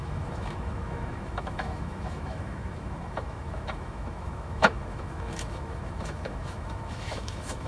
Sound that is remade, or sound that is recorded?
remade